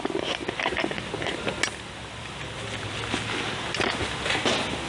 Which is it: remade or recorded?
recorded